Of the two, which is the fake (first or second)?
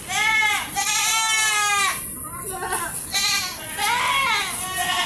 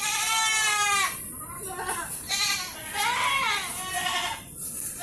second